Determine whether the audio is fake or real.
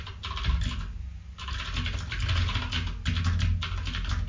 real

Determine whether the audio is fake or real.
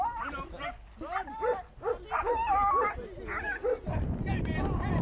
real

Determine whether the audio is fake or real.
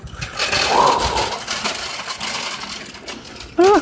real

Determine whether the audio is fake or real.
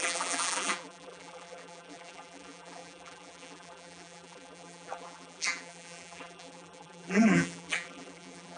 fake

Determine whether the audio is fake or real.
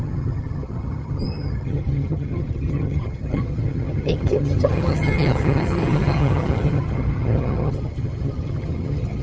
fake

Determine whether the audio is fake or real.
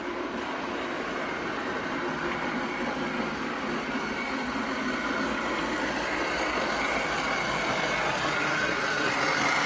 real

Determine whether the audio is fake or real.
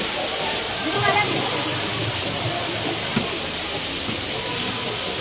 real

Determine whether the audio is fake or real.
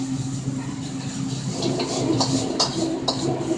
real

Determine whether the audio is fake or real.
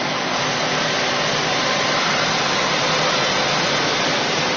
real